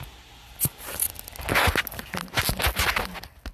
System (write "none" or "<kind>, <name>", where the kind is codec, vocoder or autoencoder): none